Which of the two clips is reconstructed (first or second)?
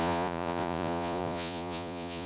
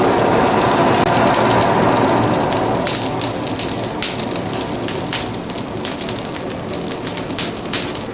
first